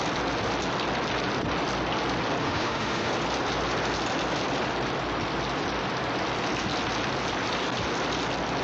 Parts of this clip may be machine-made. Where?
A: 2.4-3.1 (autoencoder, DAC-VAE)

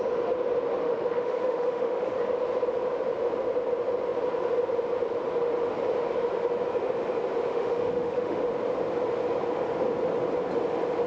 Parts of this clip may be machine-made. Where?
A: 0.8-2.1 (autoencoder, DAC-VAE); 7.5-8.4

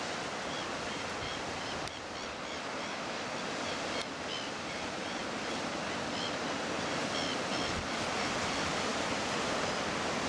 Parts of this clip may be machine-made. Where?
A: none

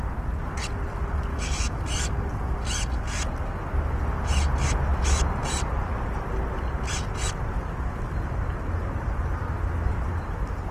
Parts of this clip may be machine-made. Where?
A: 1.3-1.8 (autoencoder, DAC-VAE)

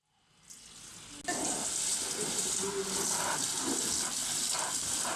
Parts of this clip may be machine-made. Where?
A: none

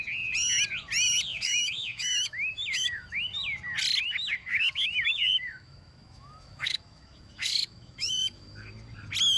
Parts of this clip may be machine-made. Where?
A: 1.3-3.2 (autoencoder, DAC-VAE); 4.4-8.7

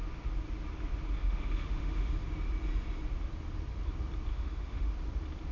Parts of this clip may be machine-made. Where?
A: 1.2-2.1 (autoencoder, DAC-VAE); 4.3-4.9